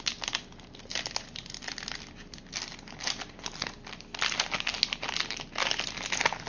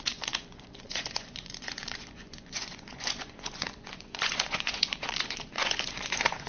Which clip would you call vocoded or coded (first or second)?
second